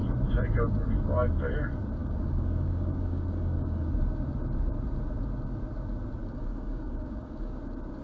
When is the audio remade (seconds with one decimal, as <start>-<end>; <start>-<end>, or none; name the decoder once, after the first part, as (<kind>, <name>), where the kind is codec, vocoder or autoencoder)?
2.0-3.9 (codec, DAC); 6.2-7.5